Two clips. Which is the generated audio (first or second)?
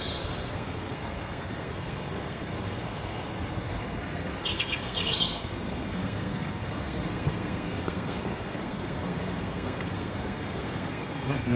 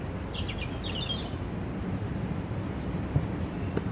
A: first